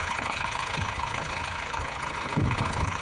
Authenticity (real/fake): fake